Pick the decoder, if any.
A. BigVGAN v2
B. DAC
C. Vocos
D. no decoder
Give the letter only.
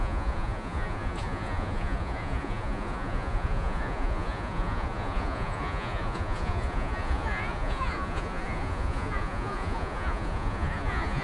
C